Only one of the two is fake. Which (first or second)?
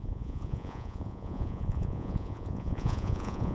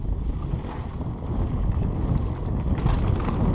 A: first